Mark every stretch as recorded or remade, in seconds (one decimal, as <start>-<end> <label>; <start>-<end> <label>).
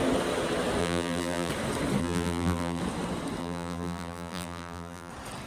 0.0-0.8 recorded; 0.8-1.5 remade; 1.5-2.0 recorded; 2.0-2.8 remade; 2.8-3.4 recorded; 3.4-5.1 remade; 5.1-5.5 recorded